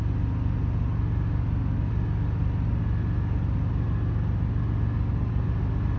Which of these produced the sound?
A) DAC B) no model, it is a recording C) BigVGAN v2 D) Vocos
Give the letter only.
B